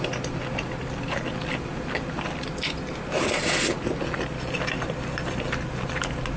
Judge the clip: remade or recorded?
recorded